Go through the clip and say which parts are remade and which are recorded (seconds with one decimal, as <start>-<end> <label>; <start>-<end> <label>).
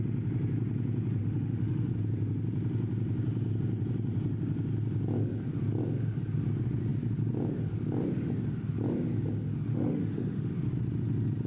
0.0-1.2 recorded; 1.2-1.9 remade; 1.9-9.7 recorded; 9.7-10.5 remade; 10.5-11.5 recorded